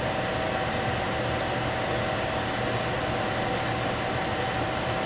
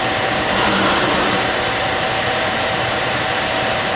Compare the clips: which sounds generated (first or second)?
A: second